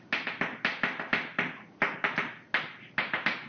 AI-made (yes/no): no